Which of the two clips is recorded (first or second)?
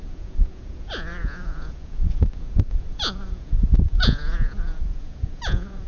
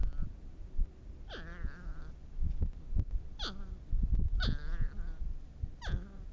second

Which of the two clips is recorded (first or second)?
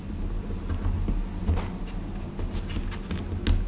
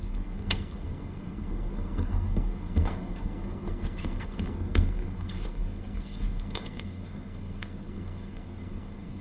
first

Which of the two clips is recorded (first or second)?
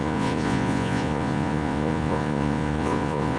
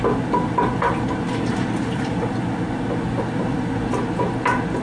second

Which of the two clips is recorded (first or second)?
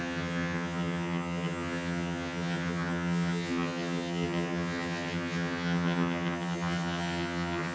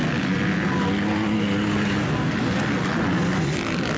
second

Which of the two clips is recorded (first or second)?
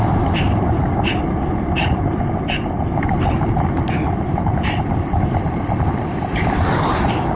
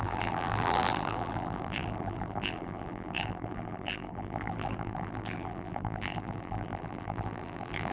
first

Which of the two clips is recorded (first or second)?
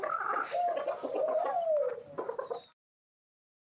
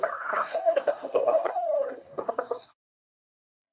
first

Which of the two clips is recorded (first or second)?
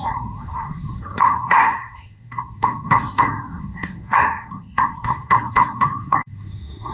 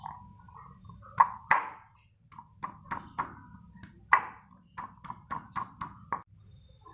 second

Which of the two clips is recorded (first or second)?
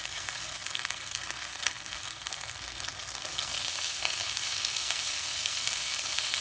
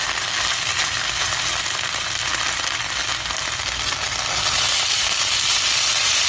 second